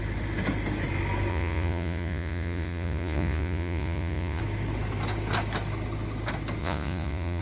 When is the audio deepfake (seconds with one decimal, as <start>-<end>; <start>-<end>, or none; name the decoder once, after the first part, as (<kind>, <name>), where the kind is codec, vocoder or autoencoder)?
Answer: 1.3-4.4 (vocoder, Vocos); 6.6-7.4

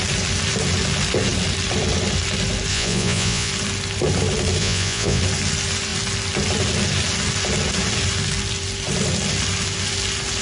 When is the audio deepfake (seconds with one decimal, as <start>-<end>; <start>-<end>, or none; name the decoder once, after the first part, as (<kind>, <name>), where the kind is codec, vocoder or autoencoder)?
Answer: 2.7-3.5 (vocoder, Vocos); 4.6-5.2

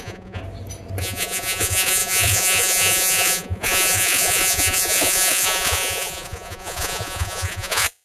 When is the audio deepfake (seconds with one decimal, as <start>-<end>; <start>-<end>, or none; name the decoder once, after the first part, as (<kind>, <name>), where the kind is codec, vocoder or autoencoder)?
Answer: 0.0-0.4 (vocoder, Vocos); 1.0-8.0

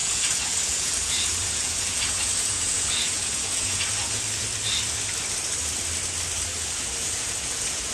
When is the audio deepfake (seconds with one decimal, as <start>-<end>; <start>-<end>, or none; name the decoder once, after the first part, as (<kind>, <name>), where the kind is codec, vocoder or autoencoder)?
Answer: 0.0-4.2 (vocoder, Vocos); 6.5-7.9

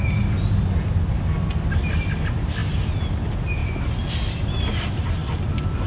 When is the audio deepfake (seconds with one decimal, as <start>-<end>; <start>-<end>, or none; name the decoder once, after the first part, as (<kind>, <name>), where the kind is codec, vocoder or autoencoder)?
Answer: none

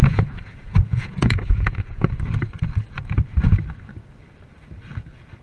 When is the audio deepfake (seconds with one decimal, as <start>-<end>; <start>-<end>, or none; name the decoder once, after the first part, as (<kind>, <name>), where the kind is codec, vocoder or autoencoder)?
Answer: 0.0-2.1 (vocoder, Vocos)

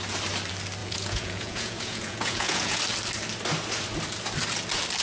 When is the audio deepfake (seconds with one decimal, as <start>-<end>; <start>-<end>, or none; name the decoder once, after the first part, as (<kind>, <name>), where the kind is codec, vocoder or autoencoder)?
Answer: 0.8-2.8 (vocoder, Vocos)